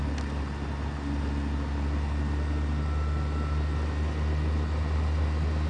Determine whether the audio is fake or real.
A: real